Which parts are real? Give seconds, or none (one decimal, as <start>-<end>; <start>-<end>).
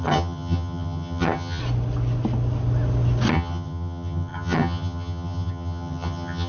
1.6-3.3